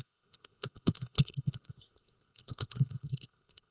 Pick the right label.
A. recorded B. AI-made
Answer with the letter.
B